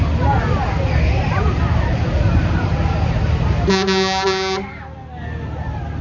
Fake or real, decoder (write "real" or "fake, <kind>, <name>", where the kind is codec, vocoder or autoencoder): real